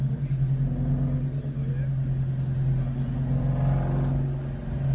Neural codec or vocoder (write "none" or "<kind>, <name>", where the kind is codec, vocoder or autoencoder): none